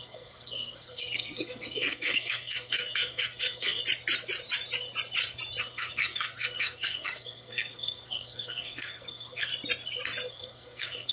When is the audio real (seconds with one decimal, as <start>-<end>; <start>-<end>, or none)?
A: 3.8-5.6; 9.5-10.3